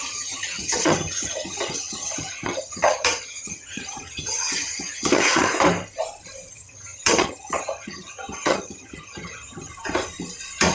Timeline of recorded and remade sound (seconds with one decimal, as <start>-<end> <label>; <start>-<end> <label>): 0.0-5.5 remade; 5.5-6.5 recorded; 6.5-9.7 remade; 9.7-10.7 recorded